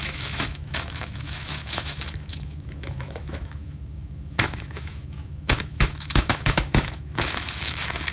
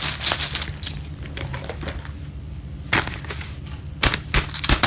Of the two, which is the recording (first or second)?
second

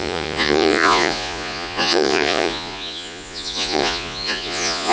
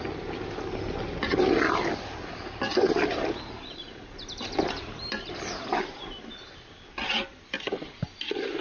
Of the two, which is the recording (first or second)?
second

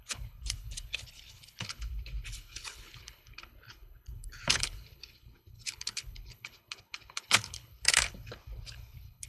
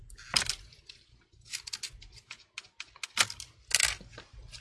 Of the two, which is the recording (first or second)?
second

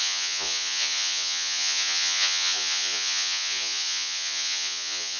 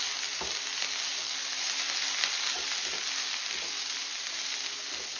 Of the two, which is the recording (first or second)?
second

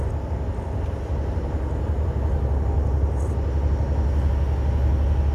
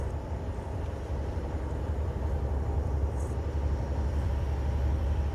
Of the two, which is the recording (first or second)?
first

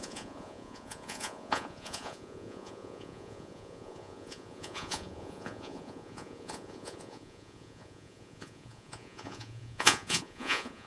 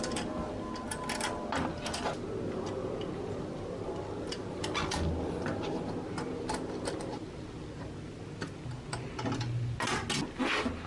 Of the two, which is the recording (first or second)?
second